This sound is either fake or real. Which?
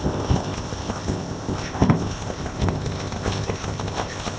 fake